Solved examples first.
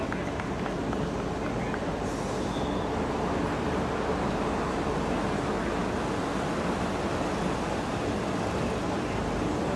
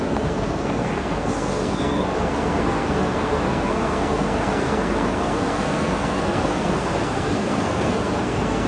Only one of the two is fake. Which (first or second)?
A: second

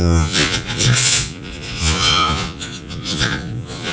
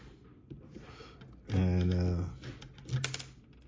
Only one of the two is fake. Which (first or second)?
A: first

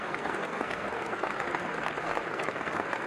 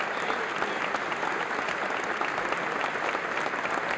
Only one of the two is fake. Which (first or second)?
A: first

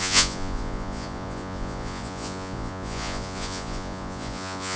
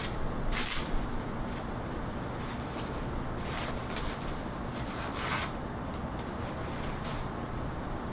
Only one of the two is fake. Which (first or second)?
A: first